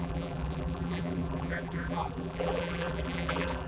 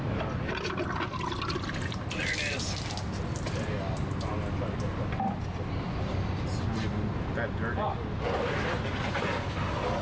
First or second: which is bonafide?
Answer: second